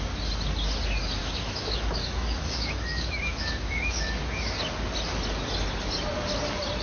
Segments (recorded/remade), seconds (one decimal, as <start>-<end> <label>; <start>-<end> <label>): 0.0-1.2 recorded; 1.2-4.2 remade; 4.2-6.8 recorded